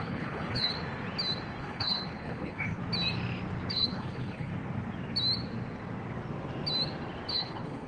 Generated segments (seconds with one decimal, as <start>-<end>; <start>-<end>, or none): 0.0-0.7; 1.6-2.8; 3.7-4.5; 7.3-7.9